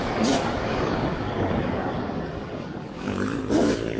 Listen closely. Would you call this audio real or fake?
fake